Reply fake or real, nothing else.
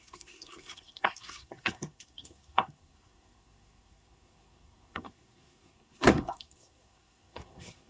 fake